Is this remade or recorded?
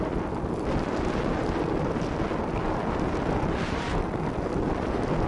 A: recorded